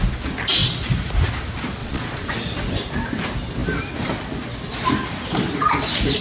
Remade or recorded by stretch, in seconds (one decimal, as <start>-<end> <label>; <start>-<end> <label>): 0.0-1.8 recorded; 1.8-2.3 remade; 2.3-6.2 recorded